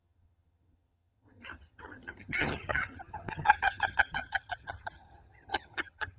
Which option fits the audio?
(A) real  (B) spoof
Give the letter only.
B